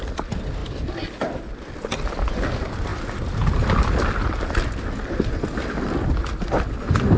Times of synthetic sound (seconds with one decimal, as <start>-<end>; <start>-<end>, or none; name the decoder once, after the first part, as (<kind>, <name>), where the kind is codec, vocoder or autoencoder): none